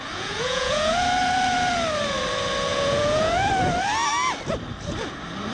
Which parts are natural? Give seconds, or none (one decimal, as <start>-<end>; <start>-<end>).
0.9-2.7; 3.5-5.5